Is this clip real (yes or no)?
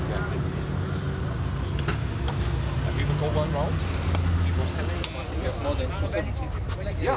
yes